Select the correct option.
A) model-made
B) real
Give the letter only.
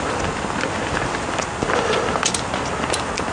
B